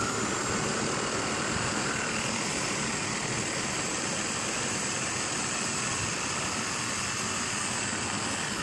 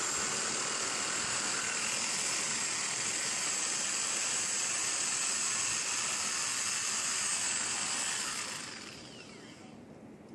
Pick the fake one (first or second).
first